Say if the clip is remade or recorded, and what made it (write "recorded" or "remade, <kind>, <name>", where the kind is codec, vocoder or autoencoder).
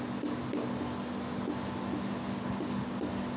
recorded